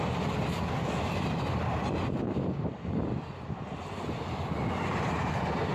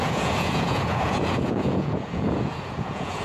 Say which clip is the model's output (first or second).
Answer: second